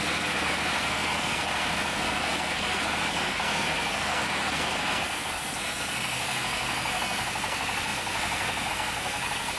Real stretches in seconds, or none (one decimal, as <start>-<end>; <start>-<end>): none